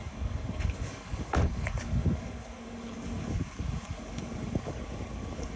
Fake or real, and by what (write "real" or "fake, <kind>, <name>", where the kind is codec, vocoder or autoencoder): fake, codec, DAC